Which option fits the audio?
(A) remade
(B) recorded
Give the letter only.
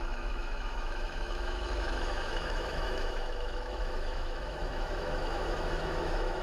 A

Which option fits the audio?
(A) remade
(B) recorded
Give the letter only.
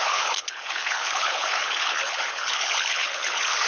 A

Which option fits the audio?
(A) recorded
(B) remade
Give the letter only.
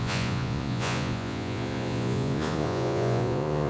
B